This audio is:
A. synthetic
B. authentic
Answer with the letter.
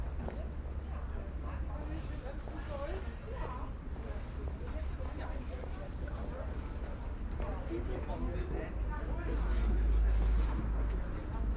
B